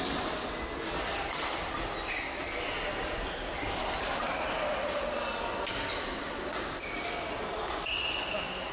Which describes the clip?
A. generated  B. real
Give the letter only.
B